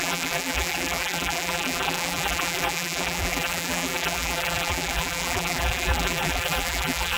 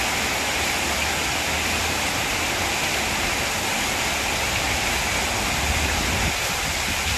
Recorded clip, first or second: second